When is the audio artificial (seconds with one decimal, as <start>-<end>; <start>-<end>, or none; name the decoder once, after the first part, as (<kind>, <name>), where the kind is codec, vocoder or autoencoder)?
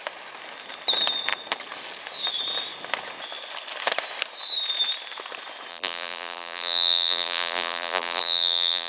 5.7-8.9 (vocoder, BigVGAN v2)